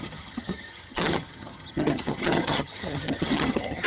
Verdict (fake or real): fake